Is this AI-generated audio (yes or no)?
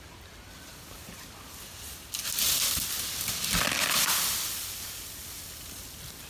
no